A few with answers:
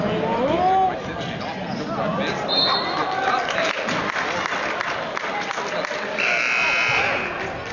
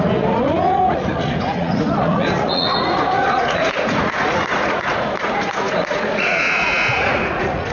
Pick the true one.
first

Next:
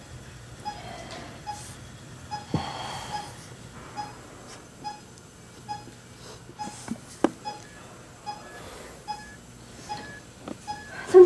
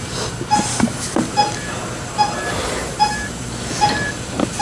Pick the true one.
first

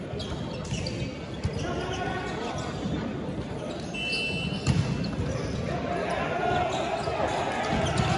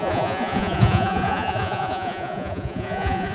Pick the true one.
first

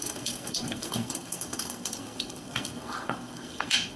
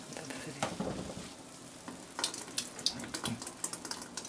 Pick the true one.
second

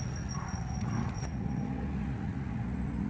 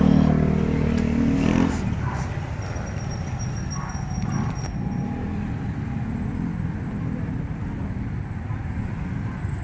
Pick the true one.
second